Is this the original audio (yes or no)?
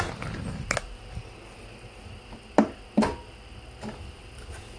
yes